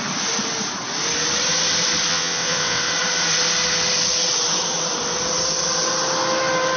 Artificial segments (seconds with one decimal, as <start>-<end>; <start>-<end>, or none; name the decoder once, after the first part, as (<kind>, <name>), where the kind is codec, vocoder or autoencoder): 2.1-2.9 (vocoder, WaveNeXt)

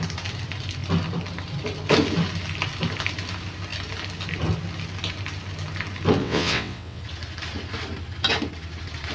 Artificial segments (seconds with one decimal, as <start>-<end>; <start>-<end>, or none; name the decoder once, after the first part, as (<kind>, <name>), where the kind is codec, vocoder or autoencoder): 6.2-7.0 (vocoder, WaveNeXt)

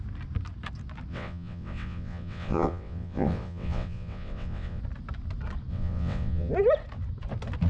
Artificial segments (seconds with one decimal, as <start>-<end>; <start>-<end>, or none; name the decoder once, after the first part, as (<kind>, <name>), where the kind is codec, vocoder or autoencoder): 1.1-4.8 (vocoder, WaveNeXt); 5.7-6.5

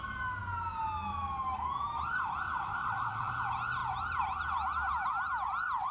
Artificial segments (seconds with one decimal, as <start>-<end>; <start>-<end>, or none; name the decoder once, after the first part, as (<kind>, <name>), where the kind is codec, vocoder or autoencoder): 2.8-3.3 (vocoder, WaveNeXt)

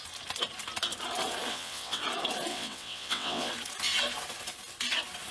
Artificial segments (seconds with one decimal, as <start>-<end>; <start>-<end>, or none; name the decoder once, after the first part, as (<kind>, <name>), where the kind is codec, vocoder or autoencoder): 1.5-2.0 (vocoder, WaveNeXt); 2.5-3.5

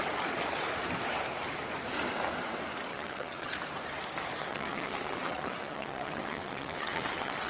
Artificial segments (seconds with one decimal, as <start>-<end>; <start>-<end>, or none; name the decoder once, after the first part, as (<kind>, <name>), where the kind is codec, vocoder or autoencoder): 2.9-3.5 (vocoder, WaveNeXt); 4.4-7.5

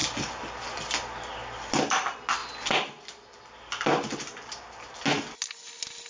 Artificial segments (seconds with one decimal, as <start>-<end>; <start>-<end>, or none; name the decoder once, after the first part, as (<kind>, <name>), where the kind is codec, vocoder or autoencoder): none